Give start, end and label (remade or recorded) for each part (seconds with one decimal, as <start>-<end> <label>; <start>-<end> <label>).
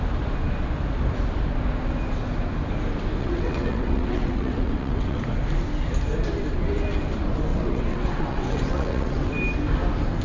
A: 0.0-3.2 recorded; 3.2-5.2 remade; 5.2-7.5 recorded; 7.5-9.3 remade; 9.3-10.2 recorded